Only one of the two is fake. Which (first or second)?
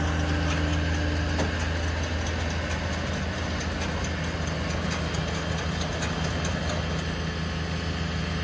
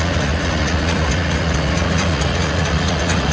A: second